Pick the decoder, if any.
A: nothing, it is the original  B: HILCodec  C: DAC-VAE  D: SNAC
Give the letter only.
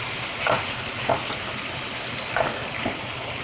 A